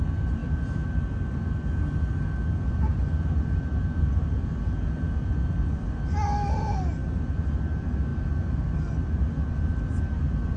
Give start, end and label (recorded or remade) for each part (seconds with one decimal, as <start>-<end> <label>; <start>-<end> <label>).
0.0-10.6 recorded